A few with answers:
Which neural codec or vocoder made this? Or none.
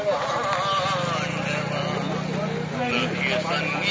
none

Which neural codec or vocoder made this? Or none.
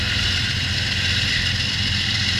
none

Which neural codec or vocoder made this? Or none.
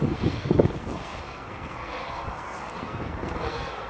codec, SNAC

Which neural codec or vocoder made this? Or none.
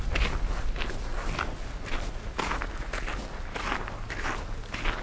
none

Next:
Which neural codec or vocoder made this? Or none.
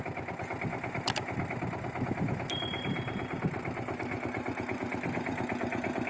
none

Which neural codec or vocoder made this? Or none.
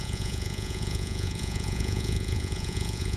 vocoder, Vocos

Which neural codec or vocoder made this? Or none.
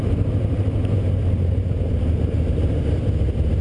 vocoder, BigVGAN v2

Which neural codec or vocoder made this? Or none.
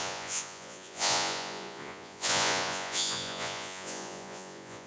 vocoder, Vocos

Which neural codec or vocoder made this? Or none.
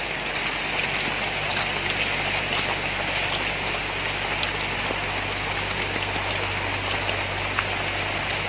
none